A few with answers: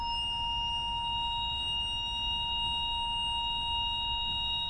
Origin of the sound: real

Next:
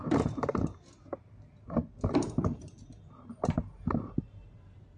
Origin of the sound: fake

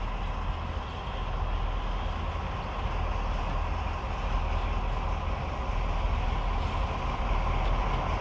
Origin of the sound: real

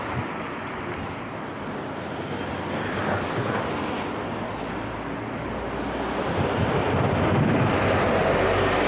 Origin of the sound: real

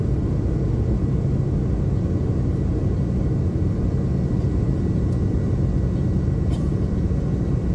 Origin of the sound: real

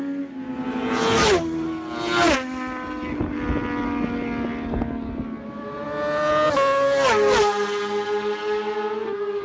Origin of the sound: real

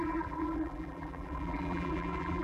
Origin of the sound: fake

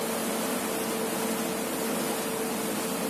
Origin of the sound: real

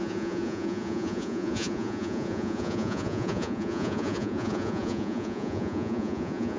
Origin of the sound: fake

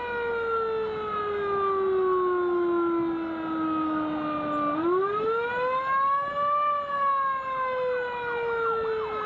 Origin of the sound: real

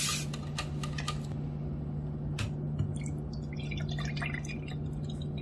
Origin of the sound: real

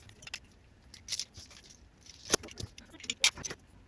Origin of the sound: real